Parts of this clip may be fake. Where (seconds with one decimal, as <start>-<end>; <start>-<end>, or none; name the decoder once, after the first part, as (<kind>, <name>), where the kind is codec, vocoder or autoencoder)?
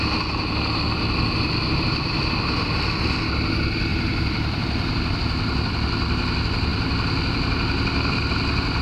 3.9-5.2 (vocoder, BigVGAN v2)